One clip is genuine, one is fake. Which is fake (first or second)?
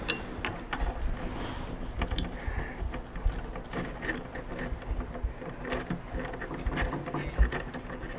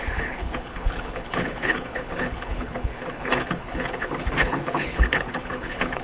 second